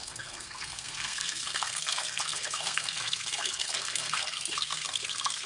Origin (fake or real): fake